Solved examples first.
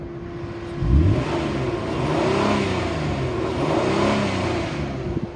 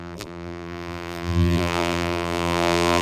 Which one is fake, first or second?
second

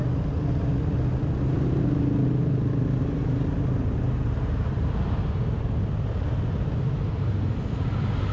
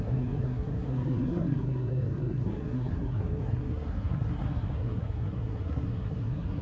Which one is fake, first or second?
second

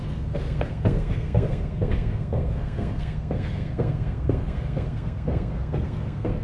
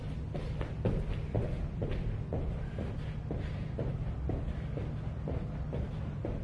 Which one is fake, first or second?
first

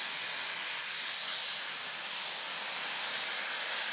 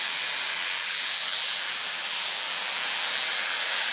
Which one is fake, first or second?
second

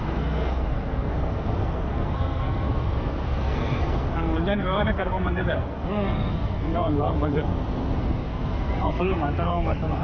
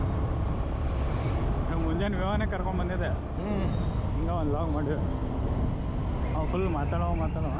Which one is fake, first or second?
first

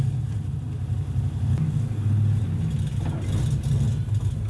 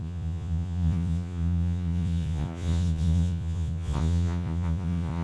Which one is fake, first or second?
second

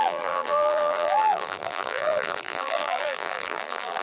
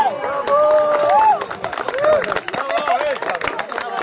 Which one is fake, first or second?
first